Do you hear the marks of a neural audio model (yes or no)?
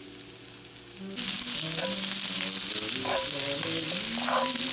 no